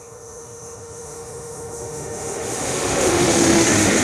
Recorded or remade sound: remade